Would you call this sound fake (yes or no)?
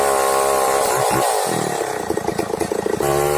no